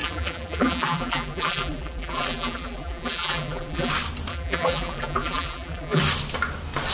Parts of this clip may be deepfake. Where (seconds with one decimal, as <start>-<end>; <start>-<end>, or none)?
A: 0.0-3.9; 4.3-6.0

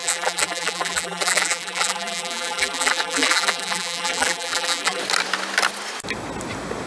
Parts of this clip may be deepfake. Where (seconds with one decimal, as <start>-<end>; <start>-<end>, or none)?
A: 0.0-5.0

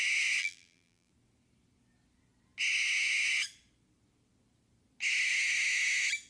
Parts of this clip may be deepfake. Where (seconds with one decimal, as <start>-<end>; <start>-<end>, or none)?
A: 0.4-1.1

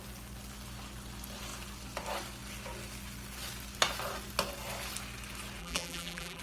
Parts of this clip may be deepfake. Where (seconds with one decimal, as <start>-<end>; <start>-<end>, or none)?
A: 5.6-6.4

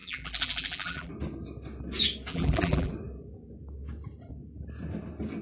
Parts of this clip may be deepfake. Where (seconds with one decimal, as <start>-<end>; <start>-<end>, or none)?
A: 0.0-1.1; 2.3-2.9

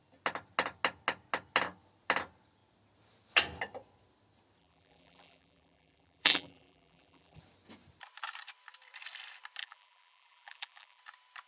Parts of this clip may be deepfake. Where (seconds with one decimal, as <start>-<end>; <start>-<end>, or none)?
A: 4.6-7.4; 9.6-11.0

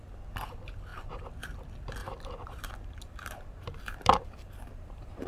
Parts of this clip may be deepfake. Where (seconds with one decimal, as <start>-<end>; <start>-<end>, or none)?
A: 2.0-5.3